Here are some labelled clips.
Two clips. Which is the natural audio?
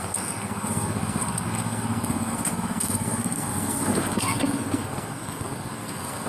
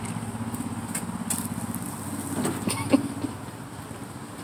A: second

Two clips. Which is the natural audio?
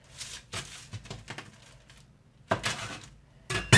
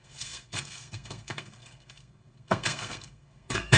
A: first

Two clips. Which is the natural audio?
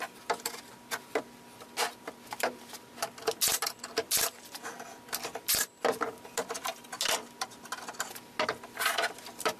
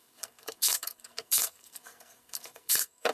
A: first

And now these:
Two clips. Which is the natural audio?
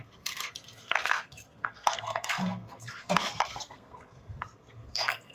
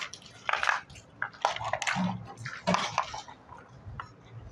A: second